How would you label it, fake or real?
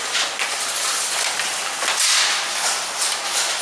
real